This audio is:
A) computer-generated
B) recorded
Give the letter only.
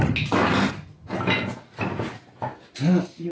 B